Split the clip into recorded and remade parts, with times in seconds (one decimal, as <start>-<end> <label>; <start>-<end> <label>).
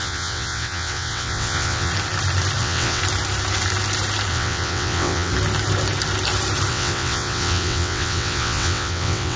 0.0-1.9 remade; 1.9-2.6 recorded; 2.6-3.0 remade; 3.0-4.3 recorded; 4.3-5.3 remade; 5.3-6.7 recorded; 6.7-9.4 remade